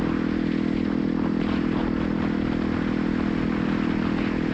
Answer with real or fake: real